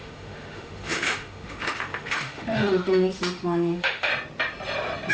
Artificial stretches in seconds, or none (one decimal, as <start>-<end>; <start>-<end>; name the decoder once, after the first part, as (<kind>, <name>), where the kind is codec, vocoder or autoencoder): 0.0-4.1 (autoencoder, DAC-VAE)